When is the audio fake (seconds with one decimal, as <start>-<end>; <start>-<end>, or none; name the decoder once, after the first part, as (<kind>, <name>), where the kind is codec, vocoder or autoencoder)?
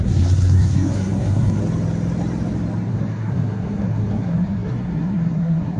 0.0-1.6 (codec, SNAC); 2.9-5.8